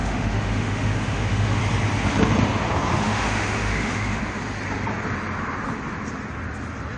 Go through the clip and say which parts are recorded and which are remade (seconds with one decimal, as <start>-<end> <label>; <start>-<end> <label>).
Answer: 0.0-1.6 remade; 1.6-2.9 recorded; 2.9-4.2 remade; 4.2-7.0 recorded